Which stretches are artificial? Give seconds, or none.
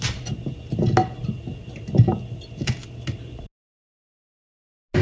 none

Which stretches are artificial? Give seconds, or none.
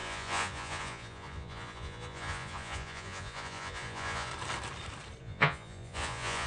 0.0-4.3 (vocoder, Vocos); 5.2-6.5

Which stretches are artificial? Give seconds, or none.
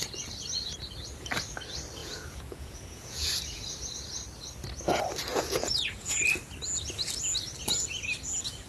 2.0-3.3 (vocoder, Vocos); 5.3-6.2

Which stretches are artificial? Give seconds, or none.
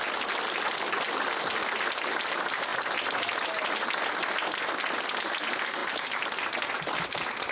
none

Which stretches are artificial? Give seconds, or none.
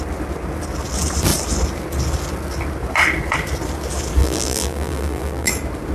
4.2-5.5 (vocoder, BigVGAN v2)